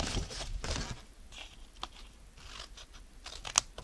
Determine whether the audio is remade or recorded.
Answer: recorded